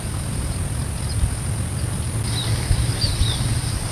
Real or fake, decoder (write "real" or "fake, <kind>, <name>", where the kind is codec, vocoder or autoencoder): real